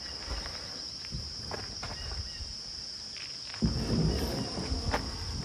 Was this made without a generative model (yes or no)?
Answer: yes